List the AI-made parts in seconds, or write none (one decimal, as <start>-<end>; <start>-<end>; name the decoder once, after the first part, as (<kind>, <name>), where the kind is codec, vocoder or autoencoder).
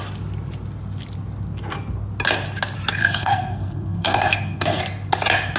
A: 3.0-4.8 (codec, SNAC)